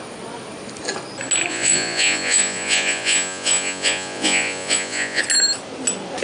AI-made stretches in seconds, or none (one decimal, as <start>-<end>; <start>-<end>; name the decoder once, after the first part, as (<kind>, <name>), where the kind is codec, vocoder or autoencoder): 1.5-5.2 (vocoder, Vocos)